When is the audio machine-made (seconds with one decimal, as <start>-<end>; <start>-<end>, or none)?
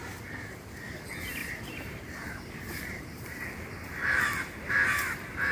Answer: 1.4-4.7